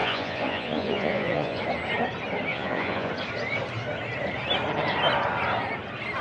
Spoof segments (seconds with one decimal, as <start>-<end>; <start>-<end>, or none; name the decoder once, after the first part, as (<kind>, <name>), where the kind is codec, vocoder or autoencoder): 0.0-1.6 (vocoder, Vocos); 2.5-3.1